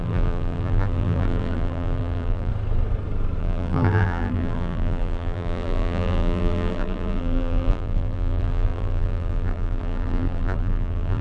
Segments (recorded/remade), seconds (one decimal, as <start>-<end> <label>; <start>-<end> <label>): 0.0-2.5 remade; 2.5-3.4 recorded; 3.4-11.2 remade